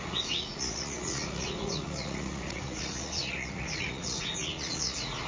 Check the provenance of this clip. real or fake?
fake